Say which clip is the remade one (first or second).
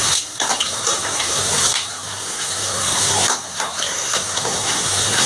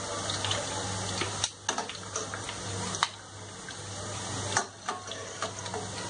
first